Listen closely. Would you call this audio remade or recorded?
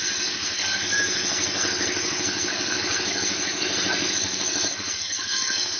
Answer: remade